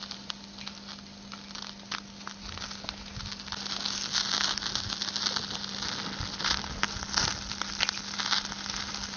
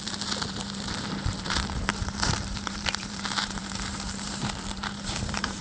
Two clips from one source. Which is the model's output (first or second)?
second